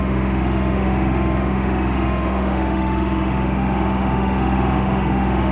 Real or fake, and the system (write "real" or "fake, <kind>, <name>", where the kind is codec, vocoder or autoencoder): fake, autoencoder, DAC-VAE